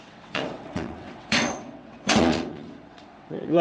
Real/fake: fake